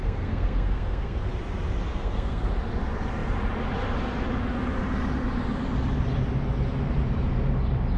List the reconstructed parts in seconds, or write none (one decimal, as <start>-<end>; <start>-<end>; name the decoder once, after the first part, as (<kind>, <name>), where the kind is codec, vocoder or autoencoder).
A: 0.0-1.2 (codec, SNAC); 1.9-2.5